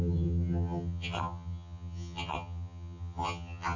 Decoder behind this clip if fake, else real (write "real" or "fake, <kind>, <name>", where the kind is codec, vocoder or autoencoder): fake, vocoder, HiFi-GAN